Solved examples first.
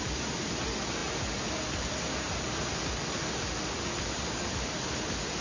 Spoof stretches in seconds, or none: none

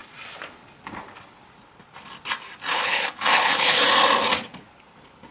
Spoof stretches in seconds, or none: 2.7-3.8 (codec, HILCodec)

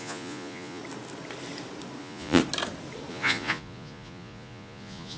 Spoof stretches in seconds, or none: 0.0-0.8 (vocoder, Vocos); 2.0-2.4; 3.1-5.2

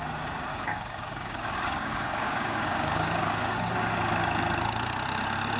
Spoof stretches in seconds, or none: 0.5-3.7 (codec, DAC)

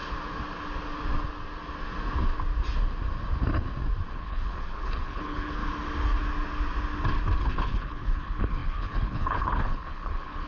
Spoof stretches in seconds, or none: 4.1-5.6 (codec, HILCodec); 7.4-10.5